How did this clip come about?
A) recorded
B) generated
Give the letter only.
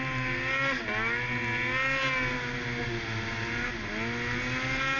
A